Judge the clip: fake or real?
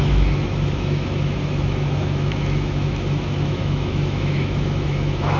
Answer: fake